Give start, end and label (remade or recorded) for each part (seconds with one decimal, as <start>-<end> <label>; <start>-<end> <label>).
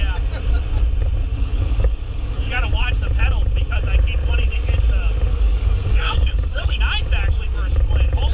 0.0-1.3 recorded; 1.3-2.5 remade; 2.5-5.3 recorded; 5.3-6.8 remade; 6.8-8.3 recorded